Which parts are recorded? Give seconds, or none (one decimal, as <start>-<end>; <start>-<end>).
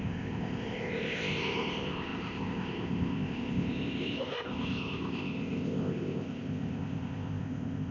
none